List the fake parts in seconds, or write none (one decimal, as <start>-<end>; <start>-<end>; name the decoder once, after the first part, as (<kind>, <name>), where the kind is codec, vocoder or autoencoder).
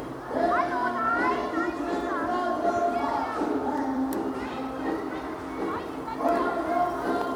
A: 0.8-1.6 (vocoder, BigVGAN v2); 2.1-2.7; 3.6-4.6